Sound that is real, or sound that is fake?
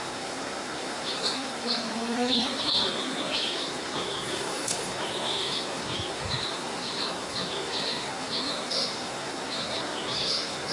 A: fake